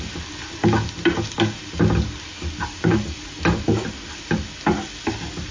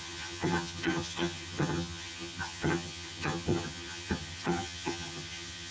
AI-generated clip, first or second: second